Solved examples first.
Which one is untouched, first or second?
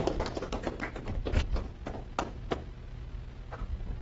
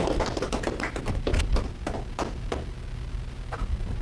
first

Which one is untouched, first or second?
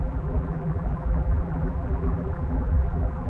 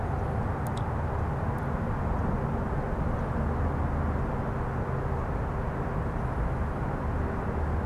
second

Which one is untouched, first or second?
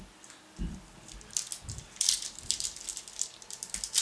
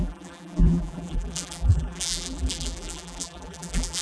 first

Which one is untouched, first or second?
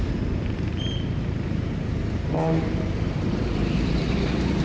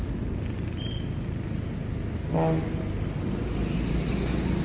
second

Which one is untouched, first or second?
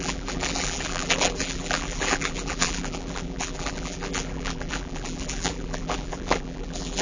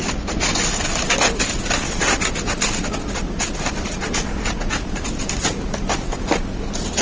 second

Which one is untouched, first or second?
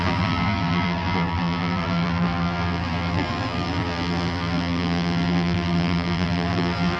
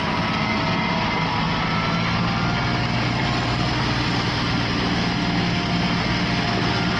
second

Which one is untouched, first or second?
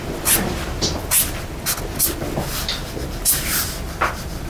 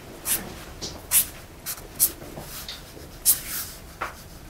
first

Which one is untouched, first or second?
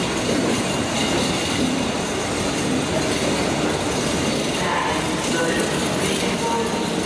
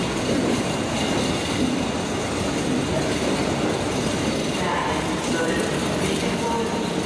first